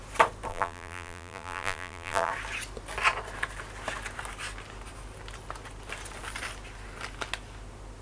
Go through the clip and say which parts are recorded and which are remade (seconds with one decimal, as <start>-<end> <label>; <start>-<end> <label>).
0.0-0.5 recorded; 0.5-2.3 remade; 2.3-8.0 recorded